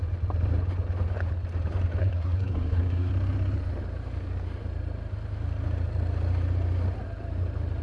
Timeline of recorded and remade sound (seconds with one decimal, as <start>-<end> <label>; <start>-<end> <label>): 0.0-2.0 recorded; 2.0-3.1 remade; 3.1-7.8 recorded